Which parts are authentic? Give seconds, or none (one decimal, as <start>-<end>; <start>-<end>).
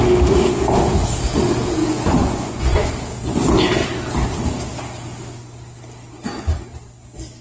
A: 0.0-1.8; 2.9-7.4